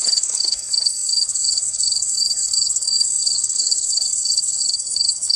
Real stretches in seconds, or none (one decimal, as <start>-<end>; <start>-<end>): none